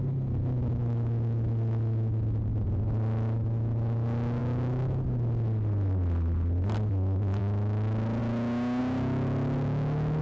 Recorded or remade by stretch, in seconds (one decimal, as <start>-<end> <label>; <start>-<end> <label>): 0.0-10.2 recorded